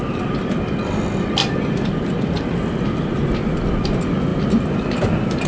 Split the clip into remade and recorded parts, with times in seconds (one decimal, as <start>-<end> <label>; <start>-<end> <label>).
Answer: 0.0-5.5 recorded